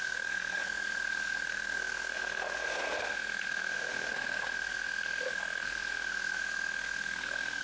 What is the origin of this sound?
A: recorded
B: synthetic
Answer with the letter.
B